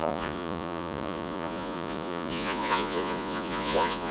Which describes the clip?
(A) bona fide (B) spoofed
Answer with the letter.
B